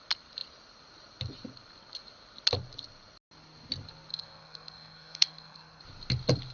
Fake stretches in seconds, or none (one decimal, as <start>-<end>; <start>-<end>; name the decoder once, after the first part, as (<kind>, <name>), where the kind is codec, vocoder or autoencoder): 4.1-5.8 (codec, SNAC)